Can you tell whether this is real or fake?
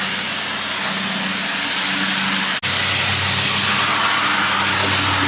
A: real